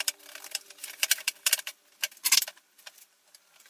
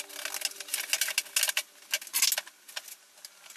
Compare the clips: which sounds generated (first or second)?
first